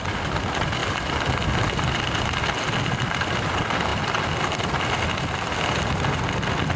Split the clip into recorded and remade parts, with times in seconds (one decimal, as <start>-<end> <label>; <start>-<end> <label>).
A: 0.0-6.8 recorded